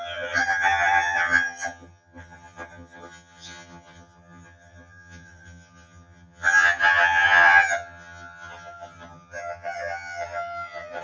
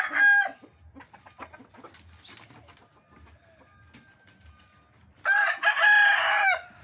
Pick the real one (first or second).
second